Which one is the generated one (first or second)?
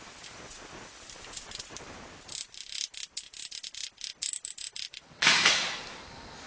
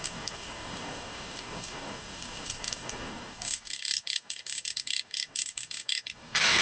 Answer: second